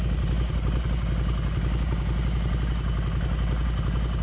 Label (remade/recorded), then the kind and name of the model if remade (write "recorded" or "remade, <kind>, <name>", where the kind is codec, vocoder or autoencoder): recorded